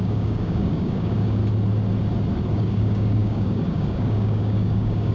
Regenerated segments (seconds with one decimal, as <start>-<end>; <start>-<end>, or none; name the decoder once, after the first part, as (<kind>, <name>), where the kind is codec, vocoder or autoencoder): 0.0-1.4 (codec, DAC); 2.5-5.1